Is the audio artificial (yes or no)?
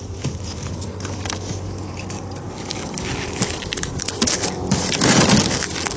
no